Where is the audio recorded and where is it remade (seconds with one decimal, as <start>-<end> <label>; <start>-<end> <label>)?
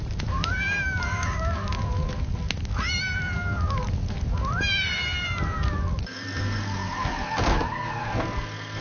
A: 0.0-8.8 recorded